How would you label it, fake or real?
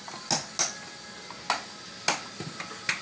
real